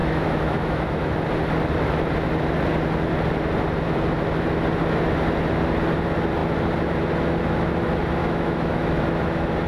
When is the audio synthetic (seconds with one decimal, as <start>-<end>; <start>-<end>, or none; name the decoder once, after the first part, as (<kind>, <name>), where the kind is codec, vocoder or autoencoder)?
0.0-1.1 (autoencoder, DAC-VAE); 8.2-9.0